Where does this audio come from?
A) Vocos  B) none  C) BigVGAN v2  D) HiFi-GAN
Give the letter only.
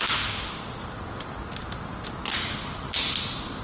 B